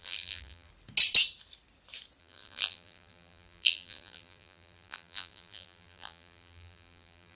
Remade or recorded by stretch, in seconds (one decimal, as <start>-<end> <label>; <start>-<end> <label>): 0.0-0.7 remade; 0.7-2.2 recorded; 2.2-7.4 remade